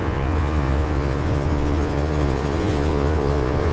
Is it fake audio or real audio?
fake